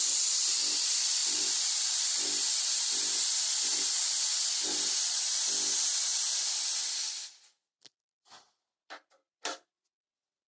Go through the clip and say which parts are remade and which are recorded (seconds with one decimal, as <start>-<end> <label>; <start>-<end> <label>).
0.0-1.2 recorded; 1.2-5.2 remade; 5.2-6.1 recorded; 6.1-9.8 remade; 9.8-10.5 recorded